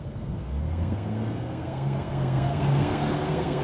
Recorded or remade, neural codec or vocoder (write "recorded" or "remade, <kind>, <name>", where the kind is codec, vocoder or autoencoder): remade, codec, SNAC